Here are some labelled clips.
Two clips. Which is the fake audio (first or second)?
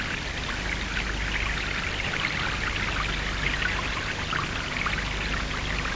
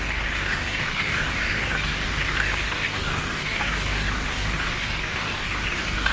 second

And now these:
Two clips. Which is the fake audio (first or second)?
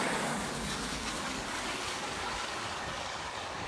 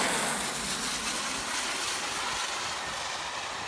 first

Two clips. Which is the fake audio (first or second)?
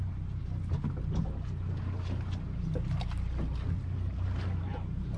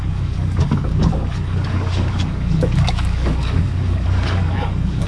second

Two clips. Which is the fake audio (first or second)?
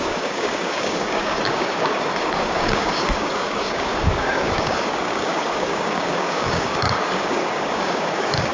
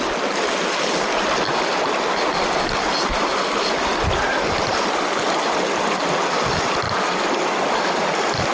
first